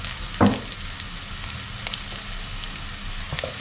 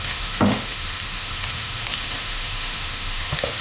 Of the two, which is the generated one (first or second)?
second